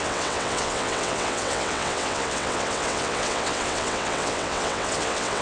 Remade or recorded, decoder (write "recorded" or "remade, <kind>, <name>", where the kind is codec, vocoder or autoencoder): remade, vocoder, WaveNeXt